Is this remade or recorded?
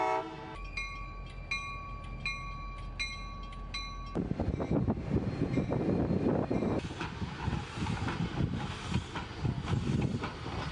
recorded